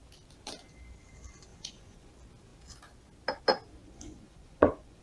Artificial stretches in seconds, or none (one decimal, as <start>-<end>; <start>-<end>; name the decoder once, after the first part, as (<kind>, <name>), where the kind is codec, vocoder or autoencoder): 1.5-2.1 (vocoder, Vocos); 3.8-5.0